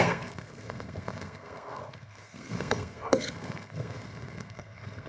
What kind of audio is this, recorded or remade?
remade